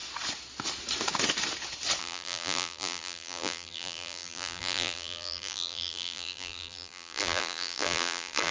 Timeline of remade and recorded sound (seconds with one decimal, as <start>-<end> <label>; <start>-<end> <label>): 0.0-2.0 recorded; 2.0-8.5 remade